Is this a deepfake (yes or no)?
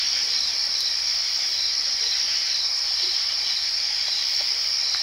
no